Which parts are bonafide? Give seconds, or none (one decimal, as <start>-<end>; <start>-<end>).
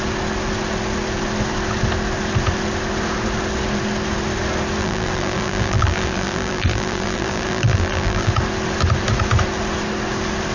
0.0-4.8; 8.3-10.5